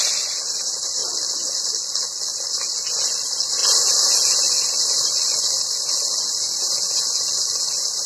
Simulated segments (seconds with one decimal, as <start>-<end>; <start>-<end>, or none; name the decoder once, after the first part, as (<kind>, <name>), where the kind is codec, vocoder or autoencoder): none